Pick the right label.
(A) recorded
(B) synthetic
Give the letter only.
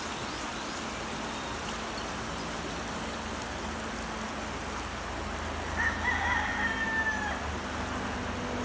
A